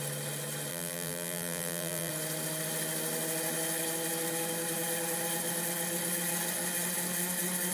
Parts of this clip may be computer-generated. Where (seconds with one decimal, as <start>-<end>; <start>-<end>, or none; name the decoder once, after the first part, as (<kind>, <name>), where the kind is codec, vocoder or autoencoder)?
0.7-2.1 (vocoder, BigVGAN v2)